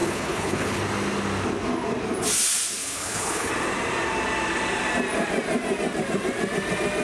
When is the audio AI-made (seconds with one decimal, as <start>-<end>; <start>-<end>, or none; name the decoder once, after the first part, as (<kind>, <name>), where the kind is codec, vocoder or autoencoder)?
0.0-0.8 (codec, HILCodec); 2.8-3.5